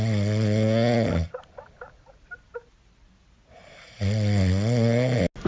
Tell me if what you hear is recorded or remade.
recorded